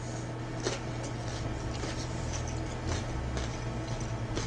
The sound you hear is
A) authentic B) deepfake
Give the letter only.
A